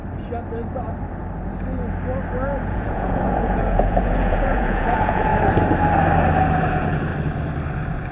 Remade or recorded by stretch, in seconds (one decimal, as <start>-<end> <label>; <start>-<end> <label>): 0.0-2.7 recorded; 2.7-5.3 remade; 5.3-6.6 recorded; 6.6-7.1 remade; 7.1-8.1 recorded